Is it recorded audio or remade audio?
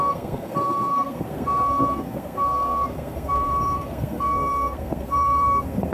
remade